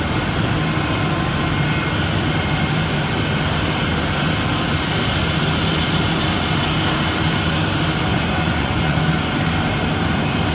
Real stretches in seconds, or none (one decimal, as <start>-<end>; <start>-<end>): 0.0-8.1; 9.0-10.5